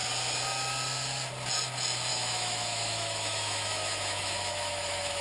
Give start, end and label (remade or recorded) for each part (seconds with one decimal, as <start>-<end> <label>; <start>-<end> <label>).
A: 0.0-2.1 recorded; 2.1-5.2 remade